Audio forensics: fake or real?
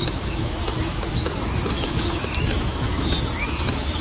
fake